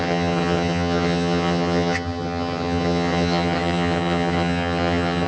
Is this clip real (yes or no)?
no